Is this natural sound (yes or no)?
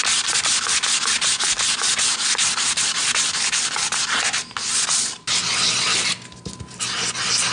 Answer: yes